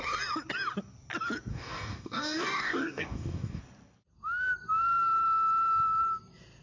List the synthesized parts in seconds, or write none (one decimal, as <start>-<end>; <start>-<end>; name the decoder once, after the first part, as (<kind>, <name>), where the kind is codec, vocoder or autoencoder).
1.5-3.6 (codec, DAC)